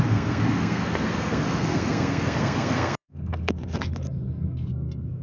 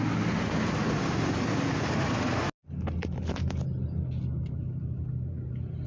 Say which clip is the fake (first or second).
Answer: first